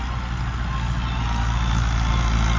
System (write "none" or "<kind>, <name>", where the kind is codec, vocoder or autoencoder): none